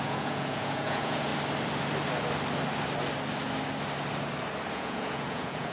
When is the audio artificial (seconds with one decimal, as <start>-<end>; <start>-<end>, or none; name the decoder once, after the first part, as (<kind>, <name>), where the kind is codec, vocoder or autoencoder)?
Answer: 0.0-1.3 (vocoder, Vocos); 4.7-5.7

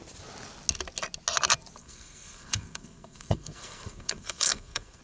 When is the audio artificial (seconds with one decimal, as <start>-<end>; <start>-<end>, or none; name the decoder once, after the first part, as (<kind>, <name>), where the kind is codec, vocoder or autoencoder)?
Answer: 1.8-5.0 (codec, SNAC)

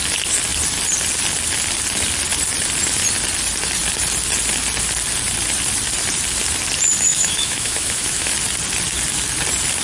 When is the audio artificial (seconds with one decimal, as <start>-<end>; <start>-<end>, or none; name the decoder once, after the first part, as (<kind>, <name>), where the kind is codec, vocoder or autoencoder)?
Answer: 7.1-8.3 (autoencoder, DAC-VAE)

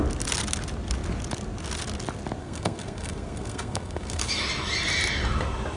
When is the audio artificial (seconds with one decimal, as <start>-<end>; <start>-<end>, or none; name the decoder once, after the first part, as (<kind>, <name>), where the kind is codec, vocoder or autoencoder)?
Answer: 2.4-4.3 (codec, SNAC)

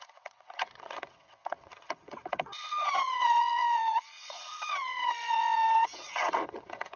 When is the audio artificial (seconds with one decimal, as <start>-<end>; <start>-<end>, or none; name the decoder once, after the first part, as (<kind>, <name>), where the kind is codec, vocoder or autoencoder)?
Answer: 0.0-7.0 (vocoder, WaveNeXt)

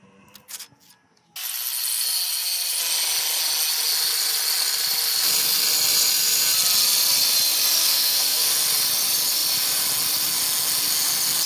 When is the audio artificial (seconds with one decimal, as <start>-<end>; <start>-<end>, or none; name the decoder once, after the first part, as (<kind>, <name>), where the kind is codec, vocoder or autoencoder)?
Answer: 7.8-8.5 (codec, SNAC)